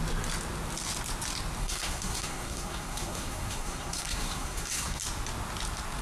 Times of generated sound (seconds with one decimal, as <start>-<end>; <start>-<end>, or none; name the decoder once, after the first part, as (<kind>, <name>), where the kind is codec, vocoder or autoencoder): 1.6-5.0 (codec, SNAC)